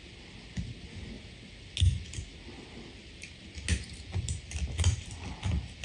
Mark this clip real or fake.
real